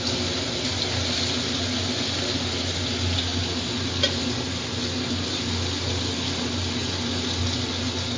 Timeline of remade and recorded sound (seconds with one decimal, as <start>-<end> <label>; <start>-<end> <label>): 0.0-8.2 recorded